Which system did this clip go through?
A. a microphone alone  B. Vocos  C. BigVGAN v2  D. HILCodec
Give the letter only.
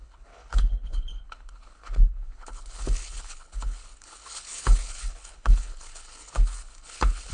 D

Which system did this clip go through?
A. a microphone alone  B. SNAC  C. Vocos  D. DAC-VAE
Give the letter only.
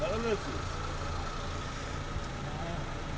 A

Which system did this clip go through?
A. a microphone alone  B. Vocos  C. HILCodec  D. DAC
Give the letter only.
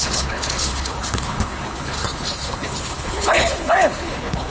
C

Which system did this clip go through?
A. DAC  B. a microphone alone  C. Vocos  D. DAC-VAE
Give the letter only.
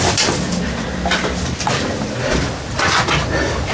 B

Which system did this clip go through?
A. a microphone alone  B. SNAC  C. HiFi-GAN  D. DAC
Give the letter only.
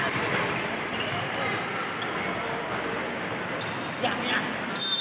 A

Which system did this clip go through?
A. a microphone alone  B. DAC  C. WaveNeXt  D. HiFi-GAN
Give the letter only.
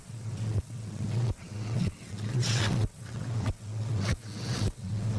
C